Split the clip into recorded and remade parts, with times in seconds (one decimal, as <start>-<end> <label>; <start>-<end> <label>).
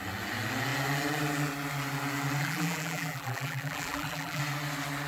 0.0-2.4 recorded; 2.4-4.4 remade; 4.4-5.1 recorded